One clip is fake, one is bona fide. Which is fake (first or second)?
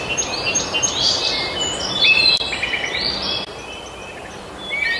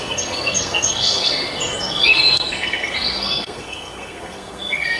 second